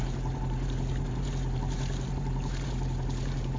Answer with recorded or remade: remade